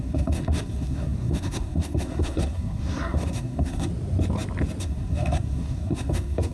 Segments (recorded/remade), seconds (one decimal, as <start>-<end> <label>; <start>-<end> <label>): 0.0-3.9 remade; 3.9-4.8 recorded; 4.8-6.5 remade